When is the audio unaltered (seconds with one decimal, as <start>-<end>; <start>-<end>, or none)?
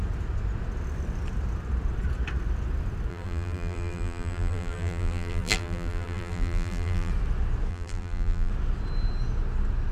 0.0-3.1; 7.1-7.7; 8.5-9.9